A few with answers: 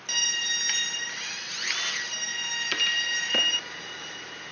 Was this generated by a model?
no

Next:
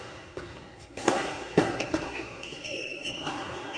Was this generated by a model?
yes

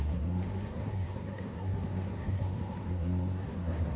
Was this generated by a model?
yes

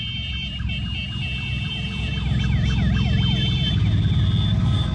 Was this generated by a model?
no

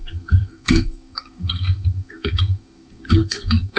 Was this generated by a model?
yes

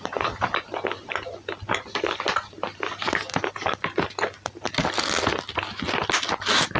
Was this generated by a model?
no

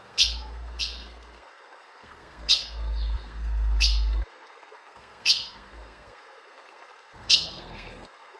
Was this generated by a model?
yes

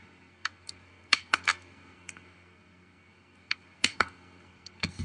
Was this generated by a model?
yes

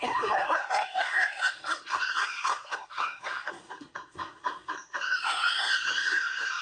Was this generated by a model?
yes